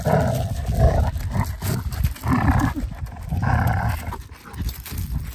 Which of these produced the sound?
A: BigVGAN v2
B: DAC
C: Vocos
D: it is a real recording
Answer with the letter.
D